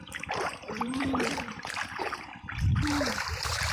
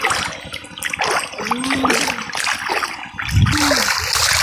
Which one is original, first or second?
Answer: second